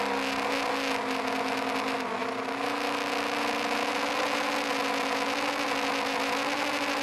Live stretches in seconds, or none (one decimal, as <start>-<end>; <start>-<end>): 0.0-7.0

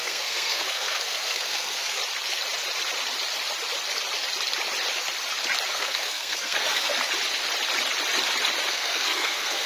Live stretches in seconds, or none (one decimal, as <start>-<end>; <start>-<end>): 2.0-5.7; 6.9-8.7